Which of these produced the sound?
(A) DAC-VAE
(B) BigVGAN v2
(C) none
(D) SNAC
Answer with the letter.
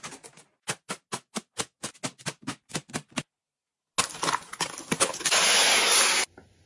C